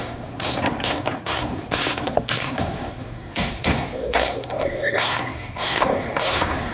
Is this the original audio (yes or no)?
no